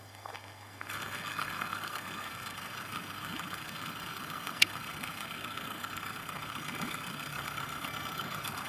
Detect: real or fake fake